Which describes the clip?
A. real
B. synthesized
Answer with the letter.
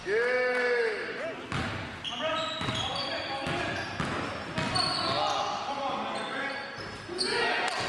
A